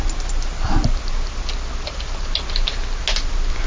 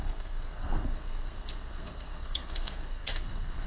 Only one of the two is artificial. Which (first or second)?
second